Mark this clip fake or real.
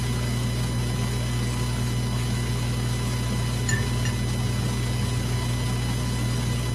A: real